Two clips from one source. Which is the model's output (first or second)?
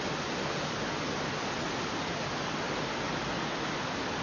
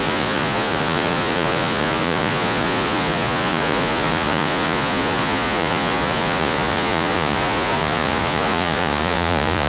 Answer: second